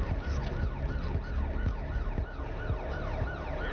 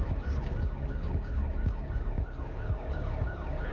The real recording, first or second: first